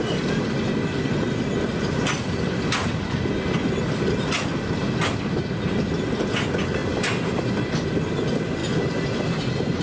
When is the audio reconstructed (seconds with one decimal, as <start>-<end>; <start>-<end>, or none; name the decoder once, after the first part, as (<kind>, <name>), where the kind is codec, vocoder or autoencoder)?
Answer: none